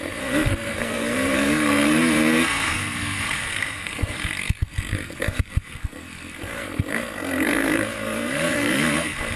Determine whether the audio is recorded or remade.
remade